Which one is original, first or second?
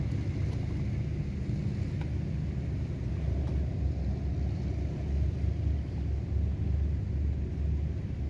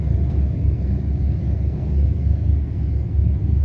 first